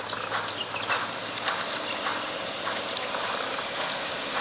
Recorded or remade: recorded